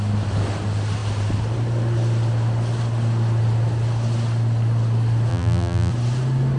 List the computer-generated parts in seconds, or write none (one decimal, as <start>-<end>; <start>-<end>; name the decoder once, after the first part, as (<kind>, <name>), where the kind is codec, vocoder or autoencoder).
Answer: 5.3-5.9 (vocoder, BigVGAN v2)